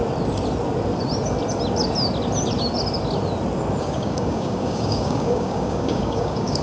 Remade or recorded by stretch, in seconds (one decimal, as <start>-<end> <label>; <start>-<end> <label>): 0.0-3.8 recorded; 3.8-6.6 remade